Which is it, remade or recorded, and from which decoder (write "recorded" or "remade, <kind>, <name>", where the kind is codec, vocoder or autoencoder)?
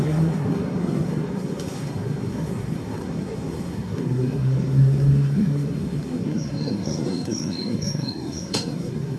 remade, codec, SNAC